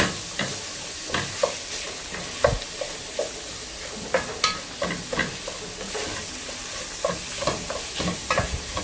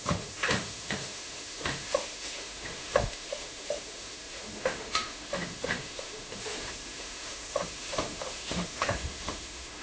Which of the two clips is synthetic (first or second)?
second